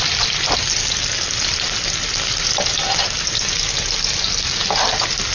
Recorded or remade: recorded